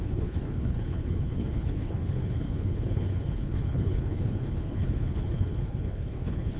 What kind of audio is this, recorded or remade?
remade